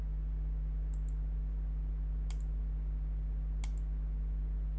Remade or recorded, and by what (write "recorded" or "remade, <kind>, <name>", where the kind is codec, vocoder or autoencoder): recorded